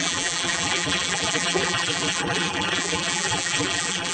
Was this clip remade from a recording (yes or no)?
yes